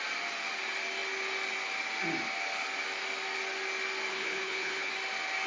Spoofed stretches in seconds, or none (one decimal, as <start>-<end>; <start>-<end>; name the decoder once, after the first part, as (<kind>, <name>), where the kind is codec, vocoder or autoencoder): 4.1-4.9 (codec, HILCodec)